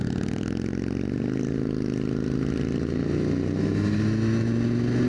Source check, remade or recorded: recorded